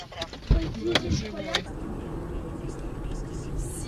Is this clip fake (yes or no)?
no